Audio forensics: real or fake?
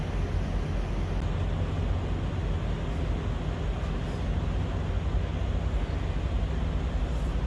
real